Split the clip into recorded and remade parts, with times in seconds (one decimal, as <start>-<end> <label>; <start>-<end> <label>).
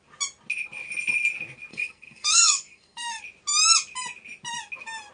0.0-1.7 recorded; 1.7-3.2 remade; 3.2-5.1 recorded